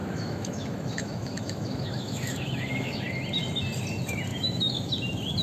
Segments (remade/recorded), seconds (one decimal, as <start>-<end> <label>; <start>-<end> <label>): 0.0-3.0 remade; 3.0-4.3 recorded; 4.3-4.9 remade; 4.9-5.4 recorded